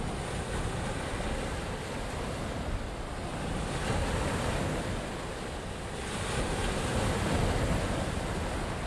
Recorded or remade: recorded